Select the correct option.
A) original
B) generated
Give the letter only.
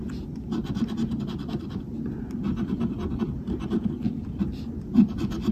A